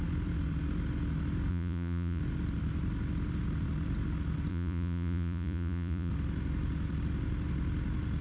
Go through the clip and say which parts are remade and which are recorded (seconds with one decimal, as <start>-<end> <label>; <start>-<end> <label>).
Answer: 0.0-1.5 recorded; 1.5-2.2 remade; 2.2-4.5 recorded; 4.5-6.1 remade; 6.1-8.2 recorded